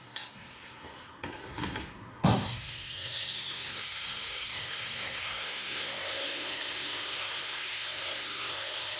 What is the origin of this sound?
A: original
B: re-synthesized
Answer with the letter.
B